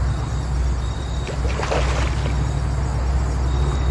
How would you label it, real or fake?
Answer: real